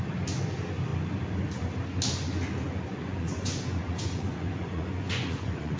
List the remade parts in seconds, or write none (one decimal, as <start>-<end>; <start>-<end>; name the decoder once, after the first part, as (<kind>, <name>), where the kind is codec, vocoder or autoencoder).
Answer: 2.9-5.8 (vocoder, Vocos)